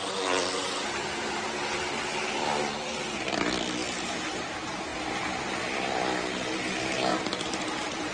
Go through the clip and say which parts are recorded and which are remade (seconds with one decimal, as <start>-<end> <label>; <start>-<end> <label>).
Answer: 0.0-3.8 recorded; 3.8-4.5 remade; 4.5-7.1 recorded; 7.1-8.1 remade

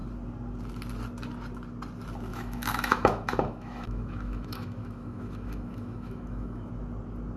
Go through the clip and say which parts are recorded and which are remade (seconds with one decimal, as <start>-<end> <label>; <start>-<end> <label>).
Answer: 0.0-2.3 recorded; 2.3-6.7 remade; 6.7-7.4 recorded